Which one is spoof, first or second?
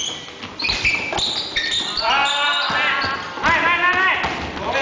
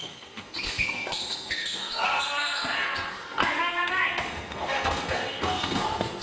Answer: second